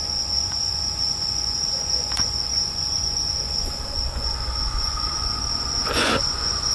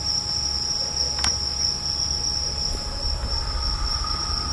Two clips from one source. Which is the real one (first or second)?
second